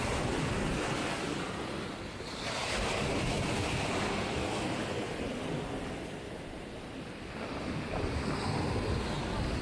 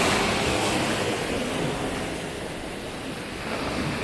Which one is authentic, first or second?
second